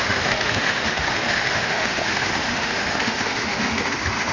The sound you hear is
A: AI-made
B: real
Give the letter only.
A